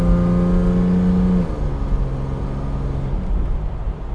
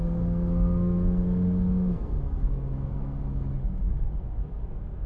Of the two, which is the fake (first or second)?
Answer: second